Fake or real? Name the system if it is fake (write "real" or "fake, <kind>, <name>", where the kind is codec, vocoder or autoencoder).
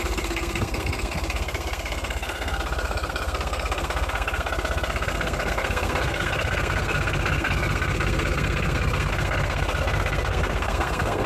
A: fake, codec, SNAC